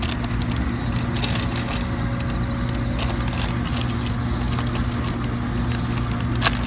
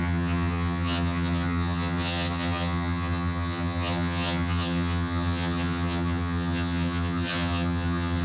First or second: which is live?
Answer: first